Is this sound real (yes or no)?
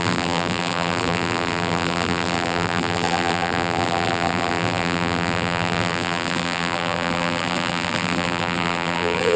no